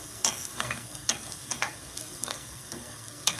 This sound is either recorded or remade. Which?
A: remade